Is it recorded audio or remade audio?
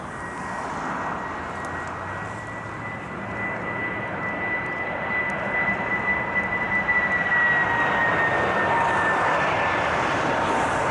recorded